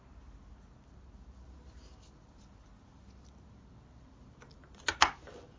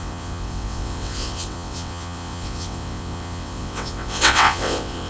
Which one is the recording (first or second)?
first